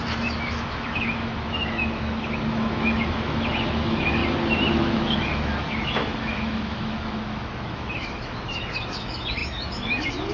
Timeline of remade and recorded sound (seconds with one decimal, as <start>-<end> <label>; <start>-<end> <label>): 0.0-4.2 remade; 4.2-4.7 recorded; 4.7-10.3 remade